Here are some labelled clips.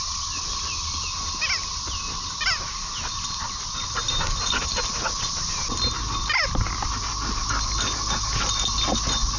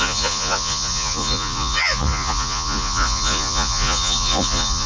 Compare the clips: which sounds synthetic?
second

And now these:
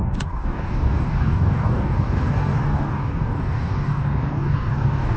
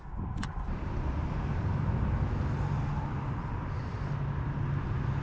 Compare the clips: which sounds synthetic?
first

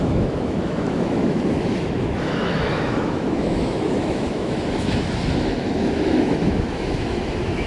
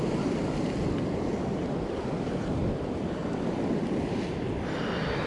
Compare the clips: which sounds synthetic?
first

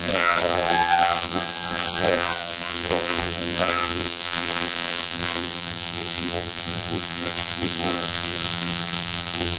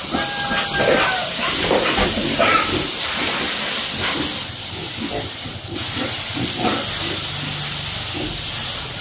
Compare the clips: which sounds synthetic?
first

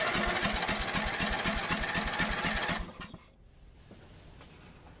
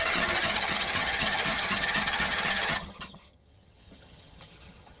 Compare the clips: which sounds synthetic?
second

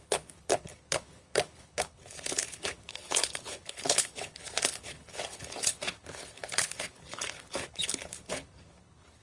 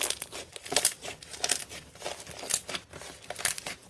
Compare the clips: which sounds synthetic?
first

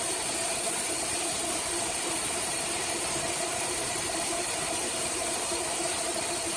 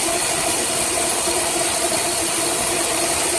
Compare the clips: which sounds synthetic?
first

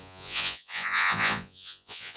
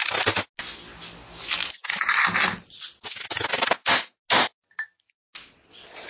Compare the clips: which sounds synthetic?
first